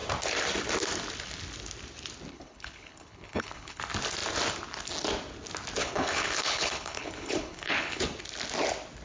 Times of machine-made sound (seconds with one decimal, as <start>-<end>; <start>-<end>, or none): 2.3-3.8; 5.8-8.0